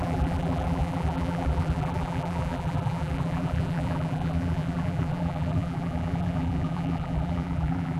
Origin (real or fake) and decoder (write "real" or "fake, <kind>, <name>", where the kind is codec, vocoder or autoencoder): fake, vocoder, BigVGAN v2